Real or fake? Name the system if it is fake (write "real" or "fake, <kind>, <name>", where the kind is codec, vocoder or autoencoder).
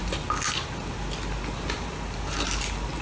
real